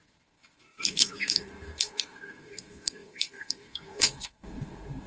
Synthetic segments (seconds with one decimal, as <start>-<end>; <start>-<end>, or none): 0.0-5.1